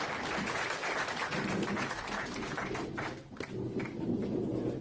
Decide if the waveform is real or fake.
fake